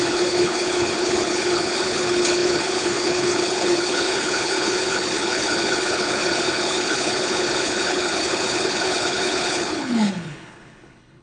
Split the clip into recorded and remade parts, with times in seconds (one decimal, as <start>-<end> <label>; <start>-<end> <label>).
0.0-11.2 remade